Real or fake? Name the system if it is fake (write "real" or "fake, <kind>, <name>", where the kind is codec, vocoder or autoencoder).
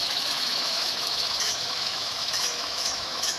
fake, autoencoder, DAC-VAE